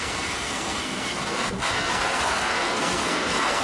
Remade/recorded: remade